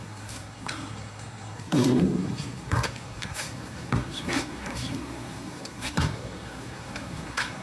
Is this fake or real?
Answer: fake